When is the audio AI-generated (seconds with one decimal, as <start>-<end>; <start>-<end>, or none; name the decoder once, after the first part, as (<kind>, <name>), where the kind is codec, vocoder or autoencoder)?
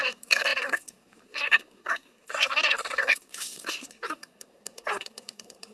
0.0-5.7 (codec, SNAC)